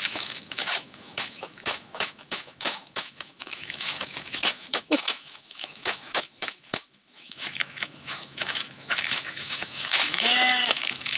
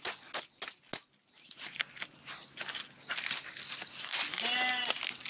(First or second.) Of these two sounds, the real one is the second